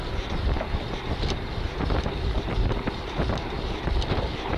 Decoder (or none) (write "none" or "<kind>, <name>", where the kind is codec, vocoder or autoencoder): none